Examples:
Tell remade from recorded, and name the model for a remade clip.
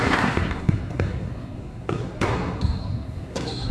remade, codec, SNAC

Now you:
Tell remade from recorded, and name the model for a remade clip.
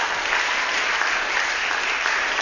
recorded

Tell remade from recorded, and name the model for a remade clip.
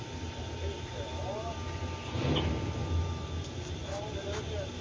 recorded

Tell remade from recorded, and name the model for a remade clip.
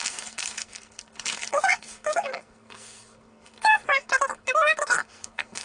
remade, codec, SNAC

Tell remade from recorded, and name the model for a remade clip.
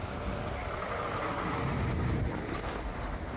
recorded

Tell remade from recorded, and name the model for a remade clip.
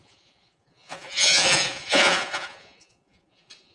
remade, vocoder, Vocos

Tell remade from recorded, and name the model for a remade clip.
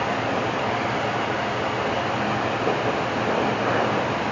recorded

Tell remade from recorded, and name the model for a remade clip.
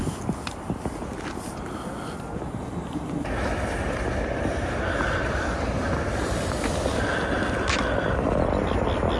recorded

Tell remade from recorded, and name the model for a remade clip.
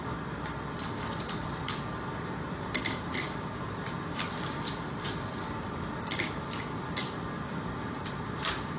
recorded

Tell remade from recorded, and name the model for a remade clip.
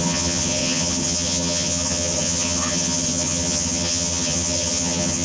remade, vocoder, HiFi-GAN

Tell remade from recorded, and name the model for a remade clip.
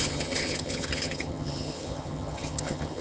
remade, vocoder, HiFi-GAN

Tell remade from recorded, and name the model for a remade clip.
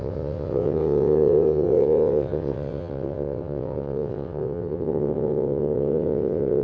remade, vocoder, WaveNeXt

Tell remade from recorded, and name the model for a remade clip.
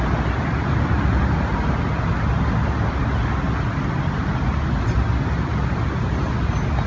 recorded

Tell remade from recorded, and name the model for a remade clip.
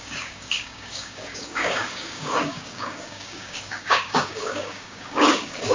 remade, codec, DAC